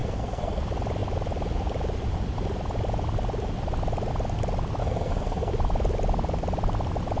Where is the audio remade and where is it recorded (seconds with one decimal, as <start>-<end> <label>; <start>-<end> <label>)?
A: 0.0-0.6 remade; 0.6-4.8 recorded; 4.8-5.5 remade; 5.5-7.2 recorded